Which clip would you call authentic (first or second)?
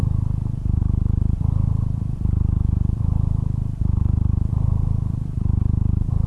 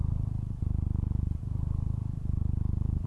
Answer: second